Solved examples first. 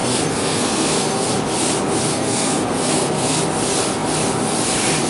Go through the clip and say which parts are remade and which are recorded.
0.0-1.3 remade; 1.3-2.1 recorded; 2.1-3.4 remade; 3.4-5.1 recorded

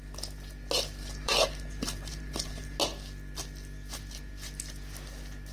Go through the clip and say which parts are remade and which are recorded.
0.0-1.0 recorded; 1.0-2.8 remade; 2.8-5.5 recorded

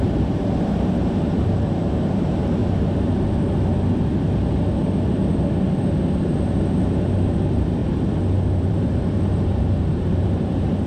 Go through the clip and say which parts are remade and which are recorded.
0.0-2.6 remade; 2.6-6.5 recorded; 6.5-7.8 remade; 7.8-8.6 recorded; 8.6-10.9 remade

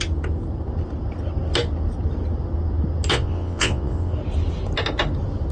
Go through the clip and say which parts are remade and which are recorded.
0.0-3.1 recorded; 3.1-4.1 remade; 4.1-5.5 recorded